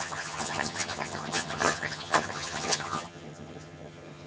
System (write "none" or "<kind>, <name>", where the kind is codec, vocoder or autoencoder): vocoder, HiFi-GAN